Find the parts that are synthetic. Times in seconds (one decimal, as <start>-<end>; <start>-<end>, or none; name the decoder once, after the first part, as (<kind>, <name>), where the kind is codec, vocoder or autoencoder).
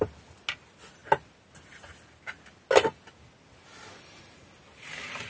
none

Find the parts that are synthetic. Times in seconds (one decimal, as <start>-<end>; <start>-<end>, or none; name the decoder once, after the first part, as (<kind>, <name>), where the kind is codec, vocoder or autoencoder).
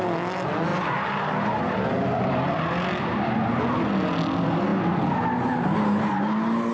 none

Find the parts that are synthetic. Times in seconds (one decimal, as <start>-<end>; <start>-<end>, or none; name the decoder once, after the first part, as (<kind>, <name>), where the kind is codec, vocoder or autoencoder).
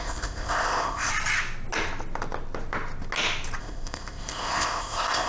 0.0-1.1 (codec, ZipCodec); 3.6-5.3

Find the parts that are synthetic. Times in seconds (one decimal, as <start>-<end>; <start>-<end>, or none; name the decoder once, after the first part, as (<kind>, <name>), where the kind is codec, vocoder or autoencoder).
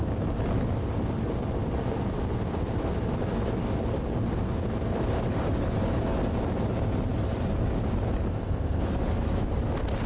8.3-8.8 (codec, ZipCodec)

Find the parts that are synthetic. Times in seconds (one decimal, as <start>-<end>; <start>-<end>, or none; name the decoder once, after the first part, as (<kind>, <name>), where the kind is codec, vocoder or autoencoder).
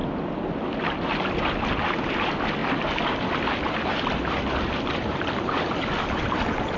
none